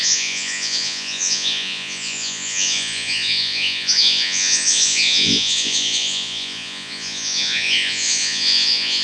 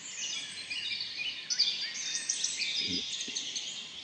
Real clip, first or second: second